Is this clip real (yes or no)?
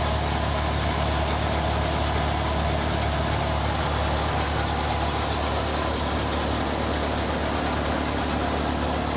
yes